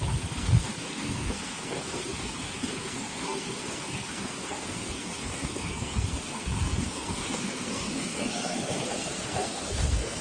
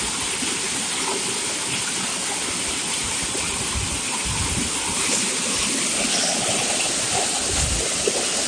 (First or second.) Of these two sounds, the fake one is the first